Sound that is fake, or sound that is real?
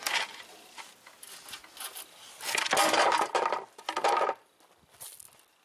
real